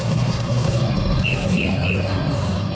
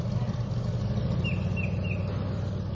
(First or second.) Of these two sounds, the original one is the second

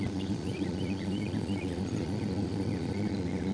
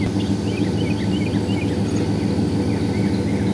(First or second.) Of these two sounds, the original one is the second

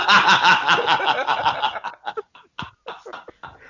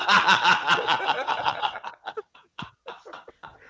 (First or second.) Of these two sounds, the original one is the first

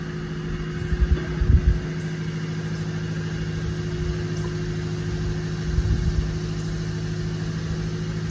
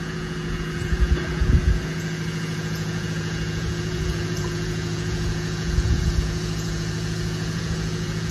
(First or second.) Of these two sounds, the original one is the first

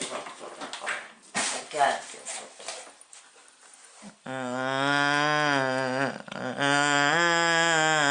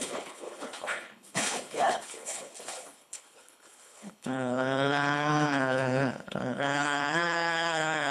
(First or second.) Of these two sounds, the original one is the first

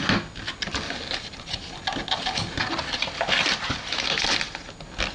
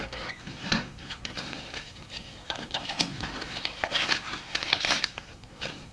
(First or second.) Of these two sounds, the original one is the first